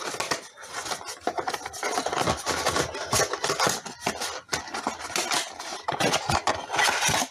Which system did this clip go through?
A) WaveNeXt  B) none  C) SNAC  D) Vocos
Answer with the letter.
B